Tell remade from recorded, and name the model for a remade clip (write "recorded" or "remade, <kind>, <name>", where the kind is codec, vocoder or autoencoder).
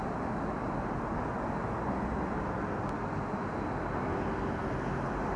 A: recorded